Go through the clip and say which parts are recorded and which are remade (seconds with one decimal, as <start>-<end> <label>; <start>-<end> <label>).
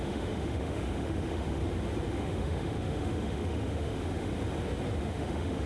0.0-1.6 remade; 1.6-2.1 recorded; 2.1-4.3 remade; 4.3-5.0 recorded; 5.0-5.7 remade